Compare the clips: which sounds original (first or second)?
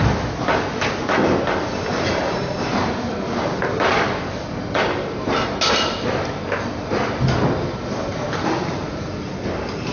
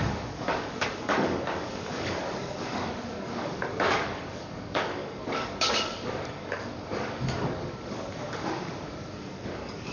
first